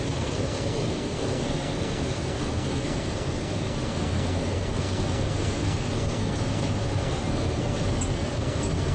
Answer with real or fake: fake